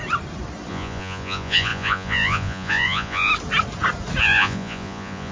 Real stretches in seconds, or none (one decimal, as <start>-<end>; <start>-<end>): 0.0-0.7; 3.3-4.2